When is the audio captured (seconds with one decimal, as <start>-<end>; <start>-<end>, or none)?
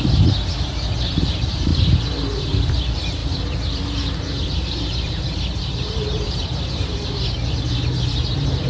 none